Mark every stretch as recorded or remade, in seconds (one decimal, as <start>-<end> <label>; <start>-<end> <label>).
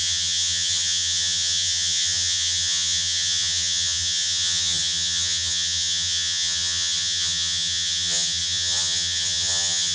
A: 0.0-9.9 remade